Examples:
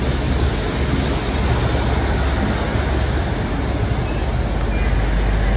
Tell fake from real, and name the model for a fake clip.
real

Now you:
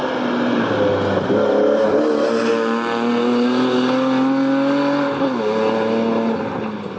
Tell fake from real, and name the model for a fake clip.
real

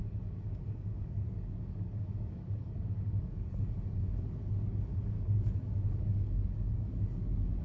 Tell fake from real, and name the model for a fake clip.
fake, codec, DAC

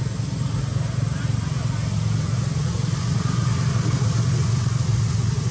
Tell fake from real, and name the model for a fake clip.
real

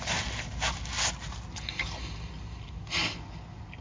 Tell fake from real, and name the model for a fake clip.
real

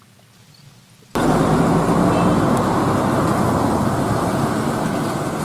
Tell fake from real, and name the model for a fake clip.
real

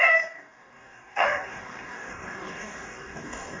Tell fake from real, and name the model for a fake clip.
fake, codec, DAC